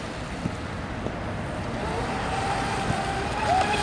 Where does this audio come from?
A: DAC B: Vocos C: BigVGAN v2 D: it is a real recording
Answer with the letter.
D